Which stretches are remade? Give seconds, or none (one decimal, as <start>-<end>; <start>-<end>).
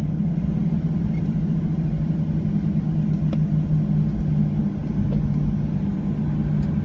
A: 4.8-5.4